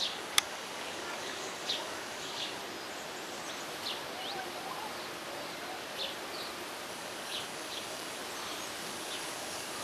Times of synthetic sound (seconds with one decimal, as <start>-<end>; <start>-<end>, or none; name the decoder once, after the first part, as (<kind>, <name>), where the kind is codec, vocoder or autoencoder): 0.0-2.6 (codec, DAC); 6.9-8.2; 8.8-9.8